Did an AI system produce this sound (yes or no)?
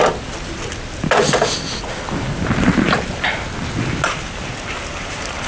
no